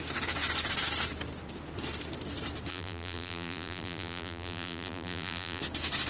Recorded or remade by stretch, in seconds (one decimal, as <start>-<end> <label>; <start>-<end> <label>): 0.0-2.7 recorded; 2.7-5.6 remade; 5.6-6.1 recorded